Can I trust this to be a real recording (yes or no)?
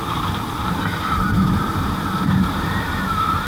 no